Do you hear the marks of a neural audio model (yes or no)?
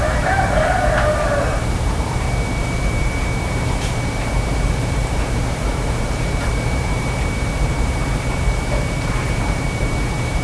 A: yes